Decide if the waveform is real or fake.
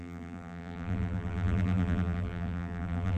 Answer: fake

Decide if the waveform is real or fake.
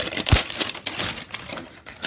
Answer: fake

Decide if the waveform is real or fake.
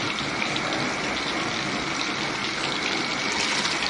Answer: real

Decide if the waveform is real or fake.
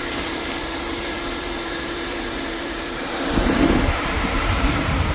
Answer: fake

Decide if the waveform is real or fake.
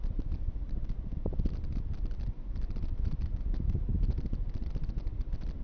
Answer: real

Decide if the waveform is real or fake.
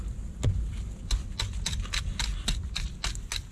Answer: real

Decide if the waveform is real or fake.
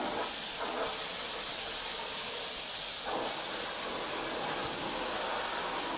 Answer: real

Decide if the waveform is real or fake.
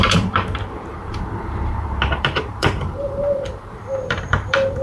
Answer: fake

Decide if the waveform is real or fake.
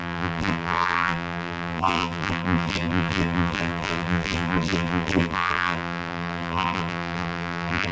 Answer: fake